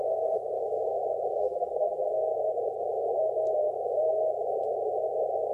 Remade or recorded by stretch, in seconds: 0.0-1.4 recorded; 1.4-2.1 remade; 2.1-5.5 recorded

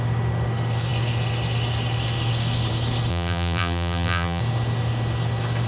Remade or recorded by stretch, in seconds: 0.0-3.1 recorded; 3.1-4.4 remade; 4.4-5.7 recorded